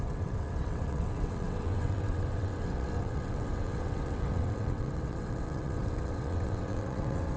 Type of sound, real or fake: fake